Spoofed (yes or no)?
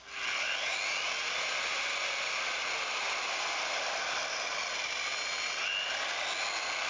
no